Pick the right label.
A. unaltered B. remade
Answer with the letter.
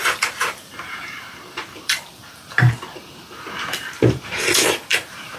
B